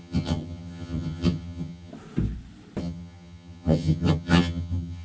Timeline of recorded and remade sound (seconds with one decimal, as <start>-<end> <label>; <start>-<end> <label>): 0.0-1.9 remade; 1.9-2.8 recorded; 2.8-5.0 remade